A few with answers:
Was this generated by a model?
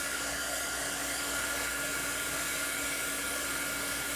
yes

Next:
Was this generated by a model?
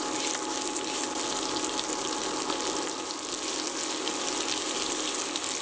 no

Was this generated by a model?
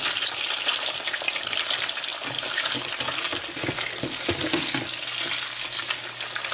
no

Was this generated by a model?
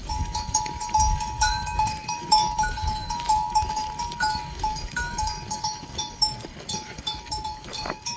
yes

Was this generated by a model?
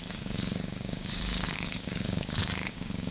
yes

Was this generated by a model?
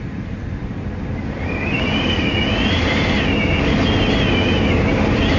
no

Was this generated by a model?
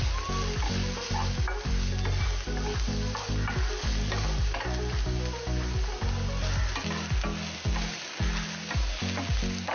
no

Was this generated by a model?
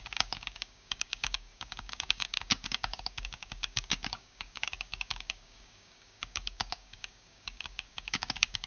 yes